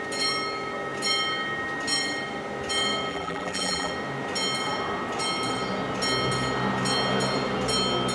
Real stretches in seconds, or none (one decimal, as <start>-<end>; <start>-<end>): 0.0-3.1; 3.9-8.1